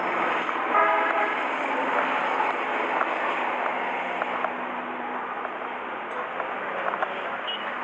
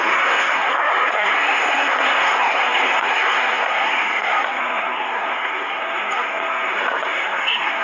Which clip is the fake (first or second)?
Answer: second